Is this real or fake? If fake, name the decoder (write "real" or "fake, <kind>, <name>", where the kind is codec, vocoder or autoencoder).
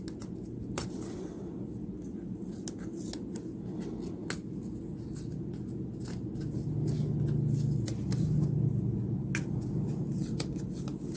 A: real